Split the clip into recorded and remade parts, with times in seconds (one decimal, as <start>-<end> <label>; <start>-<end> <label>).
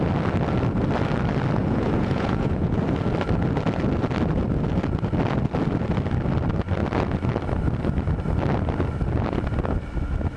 0.0-1.6 recorded; 1.6-2.8 remade; 2.8-10.4 recorded